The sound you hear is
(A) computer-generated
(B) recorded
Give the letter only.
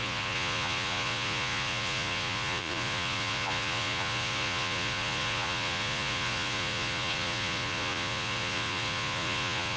A